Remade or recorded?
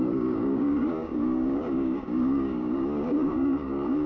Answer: remade